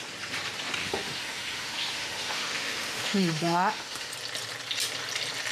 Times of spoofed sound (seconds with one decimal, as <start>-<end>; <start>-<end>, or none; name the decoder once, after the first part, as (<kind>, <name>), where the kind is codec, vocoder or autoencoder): 0.8-4.1 (autoencoder, DAC-VAE)